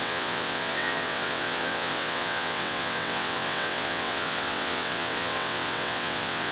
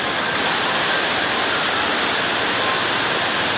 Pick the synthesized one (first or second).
first